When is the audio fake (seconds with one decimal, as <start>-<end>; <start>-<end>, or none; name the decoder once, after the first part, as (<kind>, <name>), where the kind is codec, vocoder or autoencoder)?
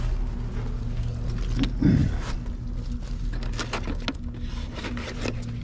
none